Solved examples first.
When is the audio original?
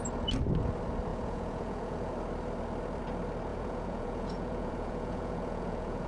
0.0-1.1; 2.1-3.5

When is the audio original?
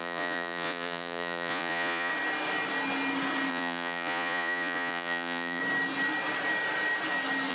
2.1-3.5; 5.6-7.5